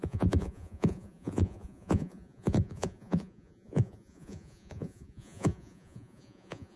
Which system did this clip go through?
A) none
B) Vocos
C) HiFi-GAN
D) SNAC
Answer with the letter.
B